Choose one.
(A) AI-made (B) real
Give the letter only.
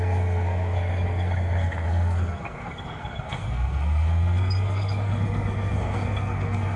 A